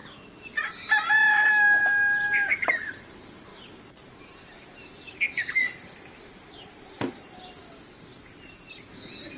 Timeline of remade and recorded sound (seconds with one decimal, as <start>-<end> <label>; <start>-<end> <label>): 0.0-1.8 recorded; 1.8-9.4 remade